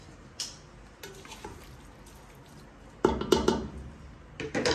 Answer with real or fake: real